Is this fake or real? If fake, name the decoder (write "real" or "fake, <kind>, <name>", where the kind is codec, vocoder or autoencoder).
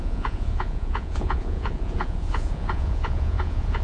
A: fake, vocoder, Vocos